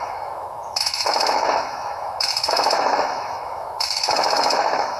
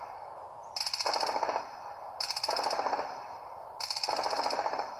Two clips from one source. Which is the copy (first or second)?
first